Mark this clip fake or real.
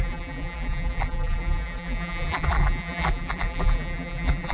fake